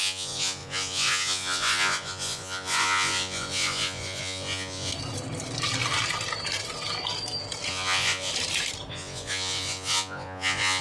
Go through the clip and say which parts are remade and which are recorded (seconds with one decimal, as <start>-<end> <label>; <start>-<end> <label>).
0.0-4.9 remade; 4.9-7.7 recorded; 7.7-8.3 remade; 8.3-8.9 recorded; 8.9-10.8 remade